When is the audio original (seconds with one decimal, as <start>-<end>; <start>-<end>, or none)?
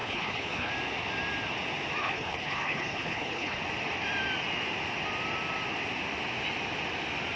0.7-2.0; 3.6-7.4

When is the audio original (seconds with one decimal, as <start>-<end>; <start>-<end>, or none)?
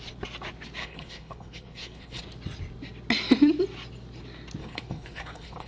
0.0-0.8; 2.2-4.6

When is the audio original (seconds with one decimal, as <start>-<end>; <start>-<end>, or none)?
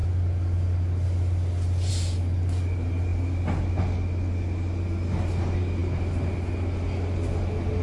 0.0-7.8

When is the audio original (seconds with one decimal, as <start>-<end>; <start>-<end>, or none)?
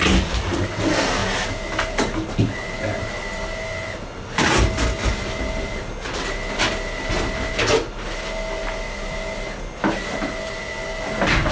0.0-11.5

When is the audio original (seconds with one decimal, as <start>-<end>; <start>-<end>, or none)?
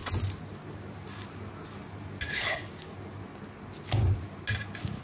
0.0-2.3; 2.7-5.0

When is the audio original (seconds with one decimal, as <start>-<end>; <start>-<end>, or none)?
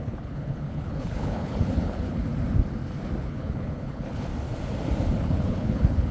2.3-3.2; 4.3-5.2